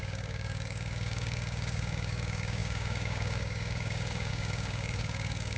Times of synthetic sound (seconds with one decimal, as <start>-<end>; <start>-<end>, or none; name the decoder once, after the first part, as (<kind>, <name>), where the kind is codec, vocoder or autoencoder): 0.0-5.6 (codec, DAC)